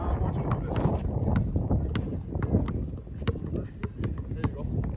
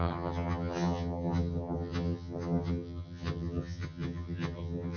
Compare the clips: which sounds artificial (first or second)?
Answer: second